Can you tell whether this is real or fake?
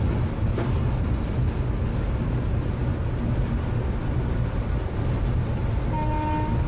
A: real